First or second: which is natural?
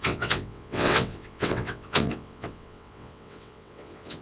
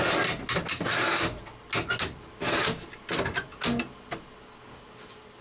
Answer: second